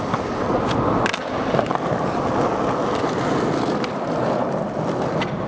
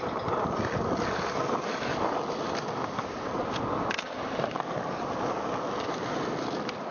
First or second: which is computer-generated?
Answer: second